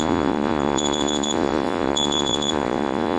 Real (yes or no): no